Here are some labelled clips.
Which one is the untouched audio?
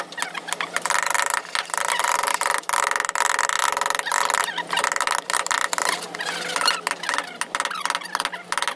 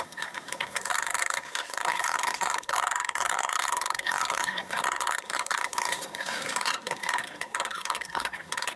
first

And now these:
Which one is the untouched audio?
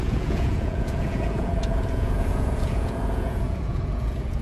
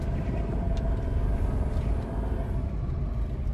second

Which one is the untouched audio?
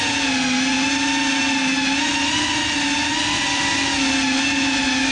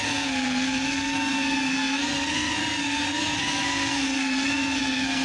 first